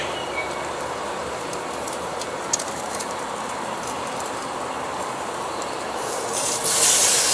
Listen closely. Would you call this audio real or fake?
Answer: fake